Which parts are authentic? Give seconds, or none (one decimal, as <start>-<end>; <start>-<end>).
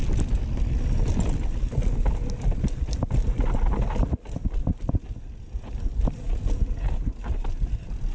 0.0-8.1